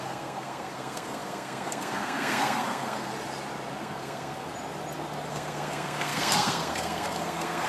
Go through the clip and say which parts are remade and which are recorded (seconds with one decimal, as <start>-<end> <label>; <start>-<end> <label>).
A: 0.0-3.1 remade; 3.1-3.8 recorded; 3.8-4.5 remade; 4.5-5.3 recorded; 5.3-7.7 remade